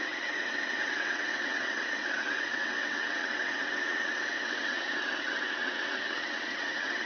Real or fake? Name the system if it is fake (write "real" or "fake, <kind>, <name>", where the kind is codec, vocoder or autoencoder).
fake, vocoder, WaveNeXt